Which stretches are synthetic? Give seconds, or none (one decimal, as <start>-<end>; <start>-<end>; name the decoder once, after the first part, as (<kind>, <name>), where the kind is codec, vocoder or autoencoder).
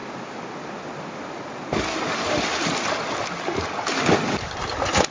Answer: none